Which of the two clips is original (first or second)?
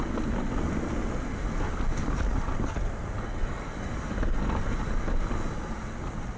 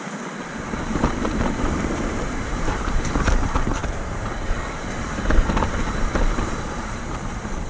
first